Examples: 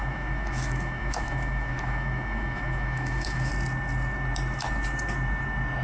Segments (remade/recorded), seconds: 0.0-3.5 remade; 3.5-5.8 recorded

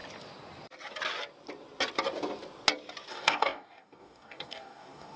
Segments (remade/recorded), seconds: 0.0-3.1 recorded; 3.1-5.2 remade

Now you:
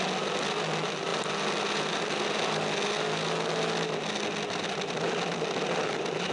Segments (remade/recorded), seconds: 0.0-6.3 recorded

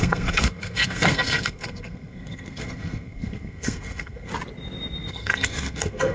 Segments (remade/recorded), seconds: 0.0-4.3 remade; 4.3-5.1 recorded; 5.1-6.1 remade